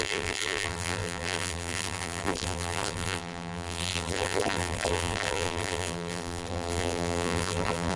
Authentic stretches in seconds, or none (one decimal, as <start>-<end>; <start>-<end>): none